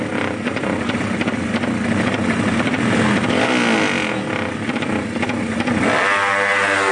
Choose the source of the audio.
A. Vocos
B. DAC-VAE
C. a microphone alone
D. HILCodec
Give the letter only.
C